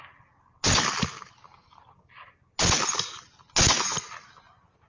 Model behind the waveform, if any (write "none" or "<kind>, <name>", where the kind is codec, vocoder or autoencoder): none